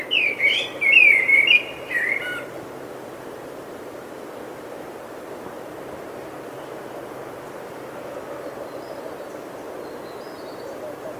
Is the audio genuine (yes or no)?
no